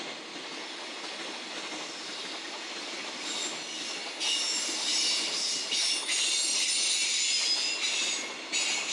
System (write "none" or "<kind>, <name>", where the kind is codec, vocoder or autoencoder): none